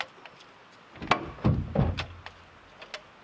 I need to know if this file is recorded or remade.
recorded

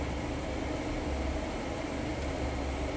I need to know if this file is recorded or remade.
recorded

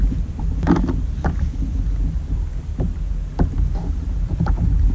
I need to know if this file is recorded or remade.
recorded